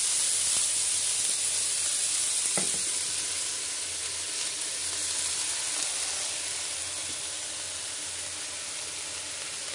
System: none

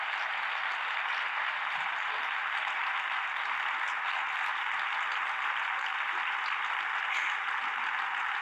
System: none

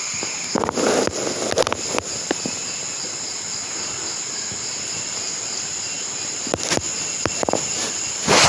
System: none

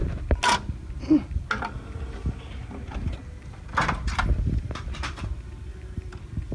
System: none